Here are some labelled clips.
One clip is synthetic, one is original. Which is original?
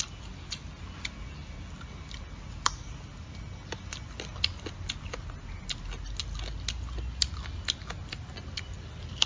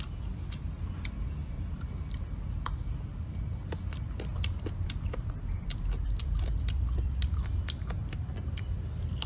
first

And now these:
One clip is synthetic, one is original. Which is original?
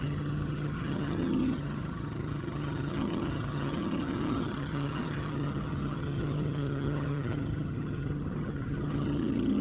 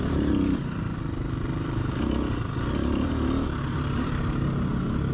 second